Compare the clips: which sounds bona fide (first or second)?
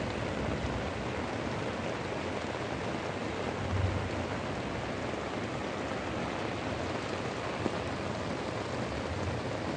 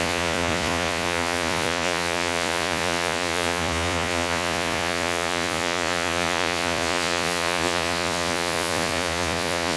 first